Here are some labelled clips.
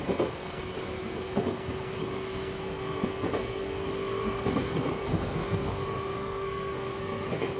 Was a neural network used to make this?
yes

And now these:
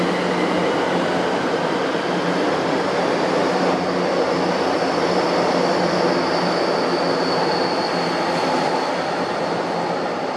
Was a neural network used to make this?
no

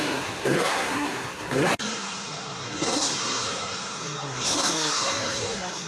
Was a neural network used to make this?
yes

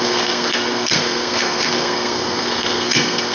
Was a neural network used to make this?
yes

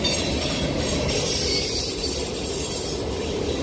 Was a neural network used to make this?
no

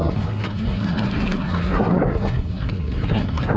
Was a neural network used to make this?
yes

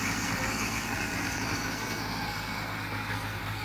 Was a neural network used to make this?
yes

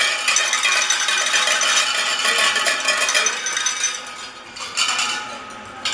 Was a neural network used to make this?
no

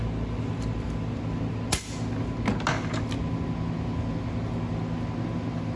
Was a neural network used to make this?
no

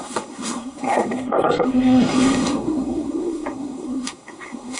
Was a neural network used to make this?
yes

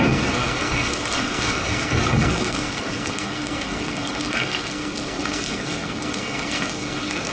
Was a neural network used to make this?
yes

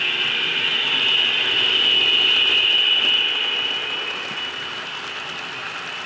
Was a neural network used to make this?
no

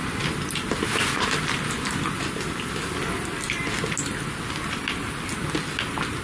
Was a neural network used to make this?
no